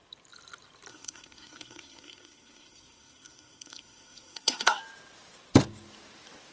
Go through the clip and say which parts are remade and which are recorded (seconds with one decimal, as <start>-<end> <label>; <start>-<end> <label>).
0.0-0.9 recorded; 0.9-4.8 remade; 4.8-6.5 recorded